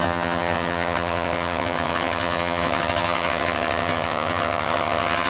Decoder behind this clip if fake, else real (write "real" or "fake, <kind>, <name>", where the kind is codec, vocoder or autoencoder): fake, vocoder, HiFi-GAN